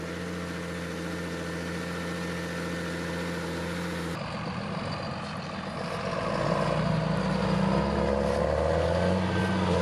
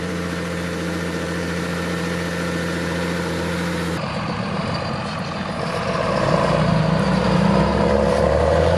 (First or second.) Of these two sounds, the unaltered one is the first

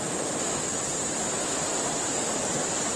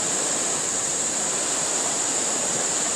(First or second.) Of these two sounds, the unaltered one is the first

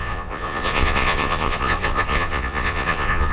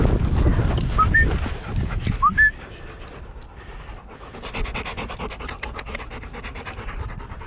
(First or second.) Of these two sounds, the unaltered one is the second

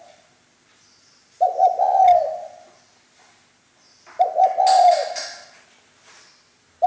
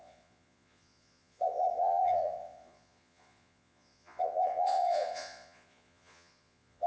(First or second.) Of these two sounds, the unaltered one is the first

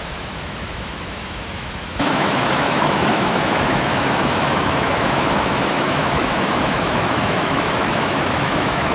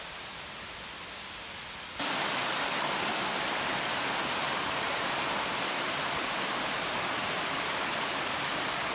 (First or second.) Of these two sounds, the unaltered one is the second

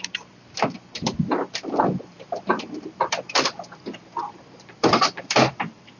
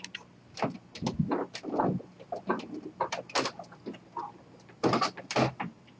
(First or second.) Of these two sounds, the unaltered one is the second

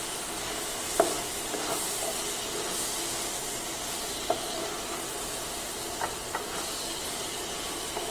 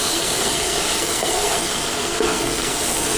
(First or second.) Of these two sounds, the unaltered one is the first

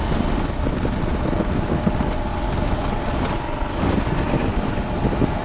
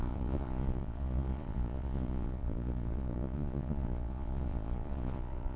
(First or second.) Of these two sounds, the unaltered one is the first